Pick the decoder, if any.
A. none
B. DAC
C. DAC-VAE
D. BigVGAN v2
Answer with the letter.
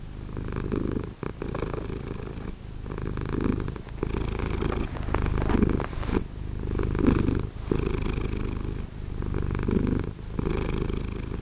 A